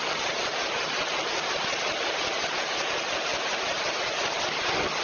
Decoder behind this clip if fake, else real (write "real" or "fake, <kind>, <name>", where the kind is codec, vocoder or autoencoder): real